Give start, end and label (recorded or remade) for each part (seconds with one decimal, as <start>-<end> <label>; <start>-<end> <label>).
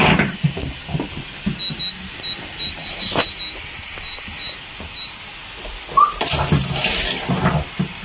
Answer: 0.0-8.0 recorded